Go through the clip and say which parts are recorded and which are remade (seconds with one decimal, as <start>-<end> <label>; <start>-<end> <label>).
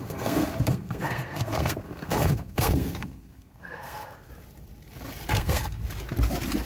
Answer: 0.0-4.3 remade; 4.3-5.3 recorded; 5.3-5.8 remade; 5.8-6.7 recorded